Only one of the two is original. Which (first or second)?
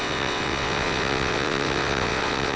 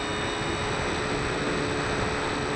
second